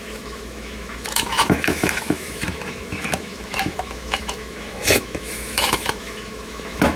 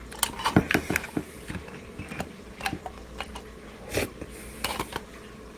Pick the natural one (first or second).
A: second